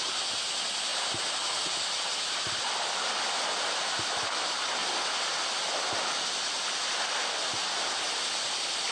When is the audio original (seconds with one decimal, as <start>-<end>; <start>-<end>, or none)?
0.0-8.9